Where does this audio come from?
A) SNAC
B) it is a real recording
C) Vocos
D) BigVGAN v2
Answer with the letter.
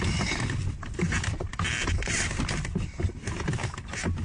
B